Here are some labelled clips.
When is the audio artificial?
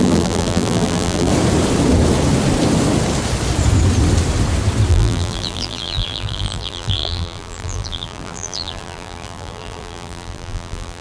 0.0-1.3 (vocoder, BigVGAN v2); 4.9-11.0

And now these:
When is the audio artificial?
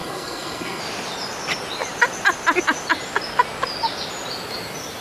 0.0-0.8 (codec, SNAC)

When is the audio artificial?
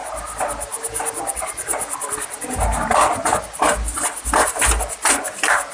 none